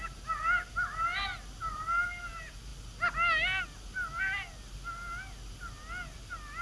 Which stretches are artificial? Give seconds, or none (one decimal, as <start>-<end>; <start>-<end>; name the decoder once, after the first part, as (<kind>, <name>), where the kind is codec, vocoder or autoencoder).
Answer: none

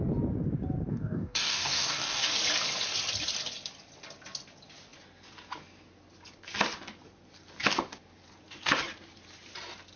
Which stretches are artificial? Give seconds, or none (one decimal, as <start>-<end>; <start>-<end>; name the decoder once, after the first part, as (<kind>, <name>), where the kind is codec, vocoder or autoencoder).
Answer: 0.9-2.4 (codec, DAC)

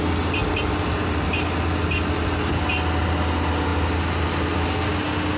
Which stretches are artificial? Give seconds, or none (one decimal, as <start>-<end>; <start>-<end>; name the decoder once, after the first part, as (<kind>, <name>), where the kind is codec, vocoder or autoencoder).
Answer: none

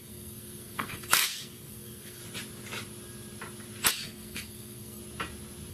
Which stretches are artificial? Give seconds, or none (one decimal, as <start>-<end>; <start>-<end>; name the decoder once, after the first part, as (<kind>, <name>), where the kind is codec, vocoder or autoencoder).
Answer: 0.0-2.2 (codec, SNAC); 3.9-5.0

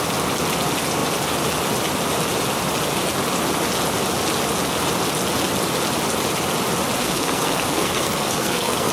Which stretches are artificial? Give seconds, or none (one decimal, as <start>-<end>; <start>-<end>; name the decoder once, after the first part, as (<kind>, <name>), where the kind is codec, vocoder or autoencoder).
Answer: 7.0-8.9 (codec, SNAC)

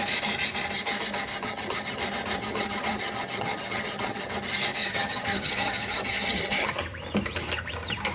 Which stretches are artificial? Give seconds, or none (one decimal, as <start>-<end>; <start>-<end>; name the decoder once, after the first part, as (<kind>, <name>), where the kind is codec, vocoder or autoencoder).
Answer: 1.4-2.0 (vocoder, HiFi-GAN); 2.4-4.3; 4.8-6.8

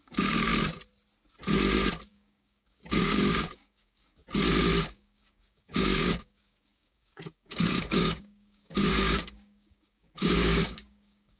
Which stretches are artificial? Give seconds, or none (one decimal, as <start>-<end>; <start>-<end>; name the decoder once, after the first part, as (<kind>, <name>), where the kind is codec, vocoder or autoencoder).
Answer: 0.0-0.5 (codec, DAC); 2.1-4.2; 4.8-11.4